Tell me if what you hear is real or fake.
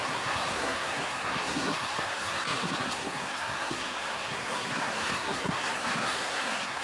fake